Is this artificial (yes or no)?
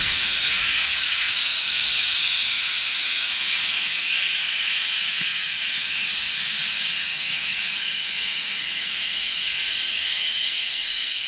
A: yes